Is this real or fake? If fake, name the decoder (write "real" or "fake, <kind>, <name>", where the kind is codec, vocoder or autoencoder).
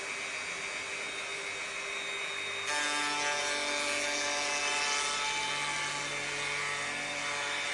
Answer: real